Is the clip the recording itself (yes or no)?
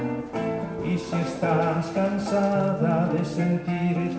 yes